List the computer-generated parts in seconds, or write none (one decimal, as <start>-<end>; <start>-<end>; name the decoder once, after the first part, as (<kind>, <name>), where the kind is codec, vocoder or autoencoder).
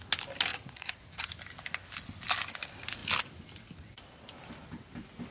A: 0.5-1.3 (vocoder, Vocos)